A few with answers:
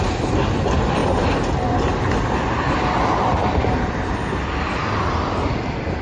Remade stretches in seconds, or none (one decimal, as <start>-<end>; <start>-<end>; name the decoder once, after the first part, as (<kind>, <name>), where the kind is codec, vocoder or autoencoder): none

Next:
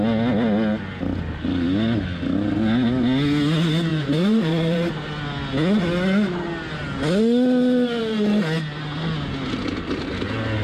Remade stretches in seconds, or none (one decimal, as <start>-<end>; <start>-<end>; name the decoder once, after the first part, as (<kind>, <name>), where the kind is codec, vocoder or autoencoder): 3.9-4.9 (vocoder, BigVGAN v2)

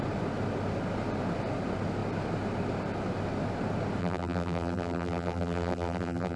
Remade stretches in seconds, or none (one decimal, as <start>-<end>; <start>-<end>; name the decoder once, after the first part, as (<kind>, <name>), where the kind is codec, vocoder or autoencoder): 4.0-6.4 (vocoder, BigVGAN v2)

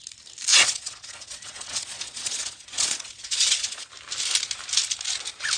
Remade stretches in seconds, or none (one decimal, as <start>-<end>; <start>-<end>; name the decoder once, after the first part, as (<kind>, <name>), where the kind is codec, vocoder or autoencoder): 0.5-3.9 (vocoder, Vocos)

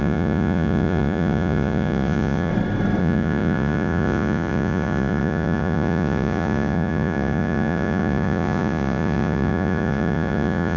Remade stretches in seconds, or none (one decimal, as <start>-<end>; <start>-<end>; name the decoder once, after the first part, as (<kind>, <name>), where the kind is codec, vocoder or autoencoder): 0.0-2.5 (vocoder, Vocos); 3.0-10.8

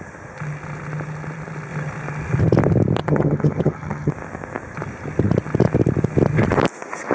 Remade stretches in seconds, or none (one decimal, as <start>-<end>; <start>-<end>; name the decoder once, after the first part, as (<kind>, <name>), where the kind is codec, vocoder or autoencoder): 3.0-4.1 (vocoder, HiFi-GAN)